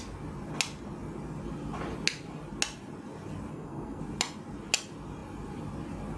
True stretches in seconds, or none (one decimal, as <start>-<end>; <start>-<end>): 0.0-3.5; 4.0-6.2